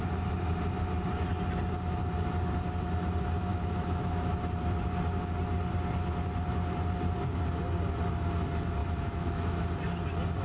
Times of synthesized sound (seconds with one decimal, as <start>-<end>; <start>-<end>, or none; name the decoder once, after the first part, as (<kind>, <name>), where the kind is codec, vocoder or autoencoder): 3.5-4.3 (autoencoder, DAC-VAE); 8.8-9.6